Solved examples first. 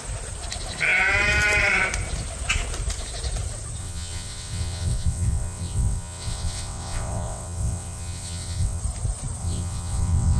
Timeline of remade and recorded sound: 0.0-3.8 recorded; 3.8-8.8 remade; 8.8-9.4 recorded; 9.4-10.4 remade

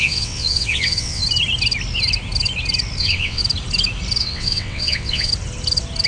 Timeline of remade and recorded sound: 0.0-1.2 remade; 1.2-3.0 recorded; 3.0-3.4 remade; 3.4-4.2 recorded; 4.2-5.3 remade; 5.3-6.1 recorded